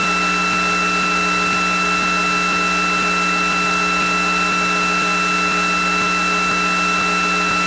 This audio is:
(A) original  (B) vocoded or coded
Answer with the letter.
A